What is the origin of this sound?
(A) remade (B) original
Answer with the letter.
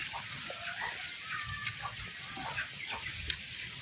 B